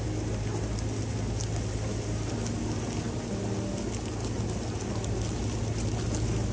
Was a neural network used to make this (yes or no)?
no